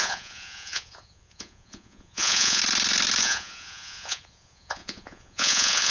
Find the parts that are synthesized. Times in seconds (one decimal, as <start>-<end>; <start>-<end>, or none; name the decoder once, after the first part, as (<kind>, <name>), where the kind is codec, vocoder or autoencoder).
0.0-2.6 (vocoder, Vocos); 3.2-5.9